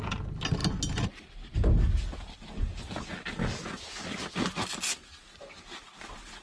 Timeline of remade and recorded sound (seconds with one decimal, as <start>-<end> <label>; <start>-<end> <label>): 0.0-6.4 recorded